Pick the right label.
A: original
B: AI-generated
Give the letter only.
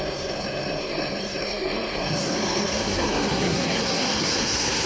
B